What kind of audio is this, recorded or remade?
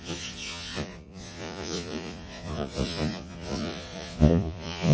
remade